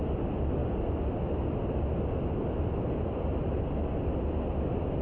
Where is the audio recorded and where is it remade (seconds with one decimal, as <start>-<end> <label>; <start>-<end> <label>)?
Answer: 0.0-5.0 recorded